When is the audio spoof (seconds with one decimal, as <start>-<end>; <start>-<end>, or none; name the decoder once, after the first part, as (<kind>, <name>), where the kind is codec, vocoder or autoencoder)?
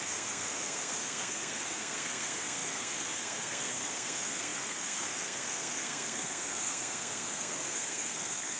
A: 0.0-8.6 (codec, SNAC)